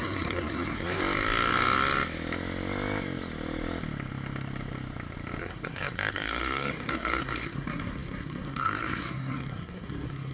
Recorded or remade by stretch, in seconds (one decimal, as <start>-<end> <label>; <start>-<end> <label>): 0.0-1.0 remade; 1.0-5.4 recorded; 5.4-10.3 remade